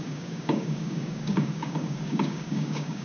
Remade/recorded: remade